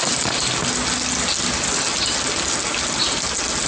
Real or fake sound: real